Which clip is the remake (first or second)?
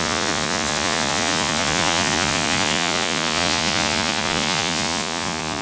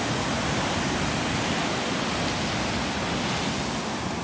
first